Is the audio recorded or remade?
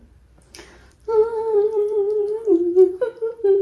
remade